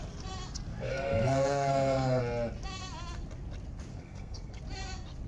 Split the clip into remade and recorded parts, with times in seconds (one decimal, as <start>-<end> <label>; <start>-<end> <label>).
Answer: 0.0-0.7 recorded; 0.7-2.2 remade; 2.2-3.9 recorded; 3.9-4.6 remade; 4.6-5.3 recorded